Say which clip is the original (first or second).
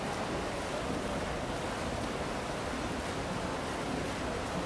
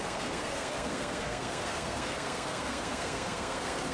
first